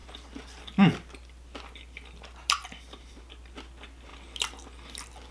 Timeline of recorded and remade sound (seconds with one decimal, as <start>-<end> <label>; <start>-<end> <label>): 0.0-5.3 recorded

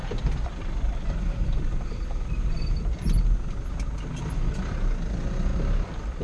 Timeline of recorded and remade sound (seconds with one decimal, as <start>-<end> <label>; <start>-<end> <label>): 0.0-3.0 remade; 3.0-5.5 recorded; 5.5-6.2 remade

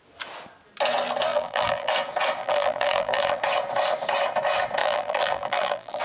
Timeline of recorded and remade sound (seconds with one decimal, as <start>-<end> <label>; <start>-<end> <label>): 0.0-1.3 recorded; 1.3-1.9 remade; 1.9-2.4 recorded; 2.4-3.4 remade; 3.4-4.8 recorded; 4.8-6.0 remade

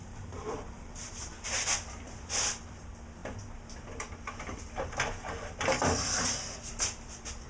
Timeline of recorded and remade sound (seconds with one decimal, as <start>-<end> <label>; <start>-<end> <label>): 0.0-1.5 remade; 1.5-7.5 recorded

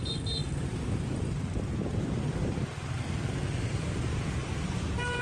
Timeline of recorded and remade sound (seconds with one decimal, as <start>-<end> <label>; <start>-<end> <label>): 0.0-0.4 recorded; 0.4-2.9 remade; 2.9-4.4 recorded; 4.4-5.2 remade

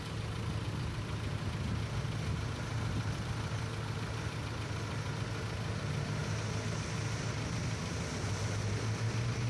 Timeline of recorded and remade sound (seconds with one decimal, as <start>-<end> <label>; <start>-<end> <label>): 0.0-9.5 recorded

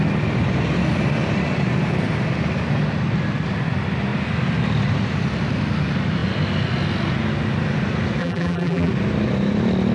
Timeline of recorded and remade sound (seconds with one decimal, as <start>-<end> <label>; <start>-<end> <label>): 0.0-8.2 recorded; 8.2-8.9 remade; 8.9-9.9 recorded